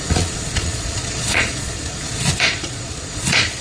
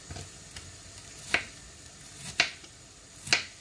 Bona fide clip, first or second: second